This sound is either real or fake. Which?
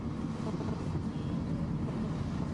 real